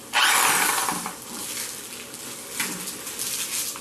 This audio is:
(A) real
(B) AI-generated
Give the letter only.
A